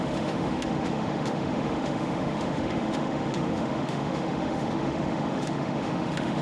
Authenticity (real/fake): fake